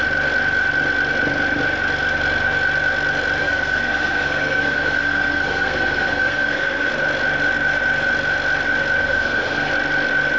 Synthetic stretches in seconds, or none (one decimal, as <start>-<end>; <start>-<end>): 3.4-6.9; 9.0-9.7